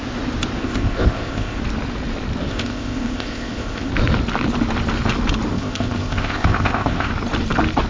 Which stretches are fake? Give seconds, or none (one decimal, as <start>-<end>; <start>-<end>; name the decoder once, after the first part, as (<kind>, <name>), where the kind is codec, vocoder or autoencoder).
0.6-1.6 (codec, ZipCodec); 2.5-3.9; 5.5-7.1